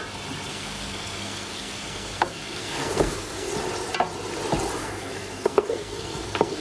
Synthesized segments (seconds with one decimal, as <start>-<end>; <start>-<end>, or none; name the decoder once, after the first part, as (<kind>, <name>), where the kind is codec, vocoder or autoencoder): 0.5-3.5 (codec, SNAC); 4.8-6.6